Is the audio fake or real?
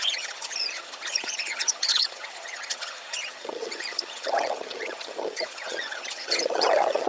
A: fake